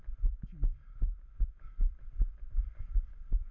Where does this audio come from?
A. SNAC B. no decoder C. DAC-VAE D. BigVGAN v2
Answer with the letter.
B